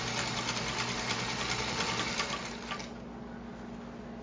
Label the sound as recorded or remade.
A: recorded